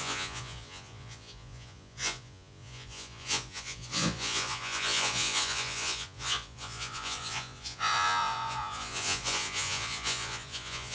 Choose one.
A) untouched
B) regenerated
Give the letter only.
B